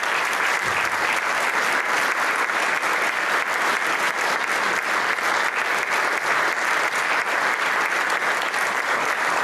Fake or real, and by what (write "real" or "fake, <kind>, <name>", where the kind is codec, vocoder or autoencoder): real